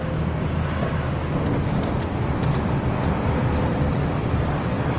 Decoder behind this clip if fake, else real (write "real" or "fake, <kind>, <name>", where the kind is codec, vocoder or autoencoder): real